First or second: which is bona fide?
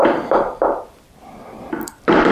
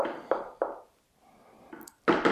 second